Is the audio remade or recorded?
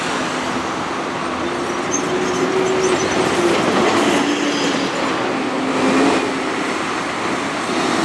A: recorded